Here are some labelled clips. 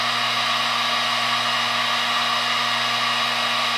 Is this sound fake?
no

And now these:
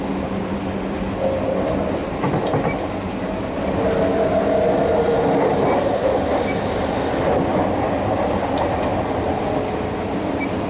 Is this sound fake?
no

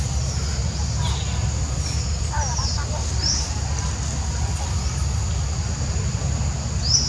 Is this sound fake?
no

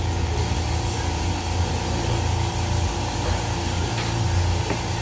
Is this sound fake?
no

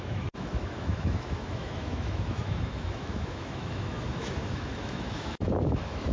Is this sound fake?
yes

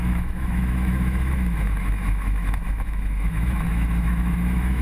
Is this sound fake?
yes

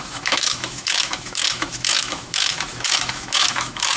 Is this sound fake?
yes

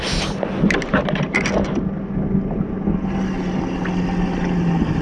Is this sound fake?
no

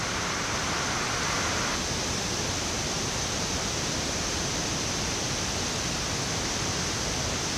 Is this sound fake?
no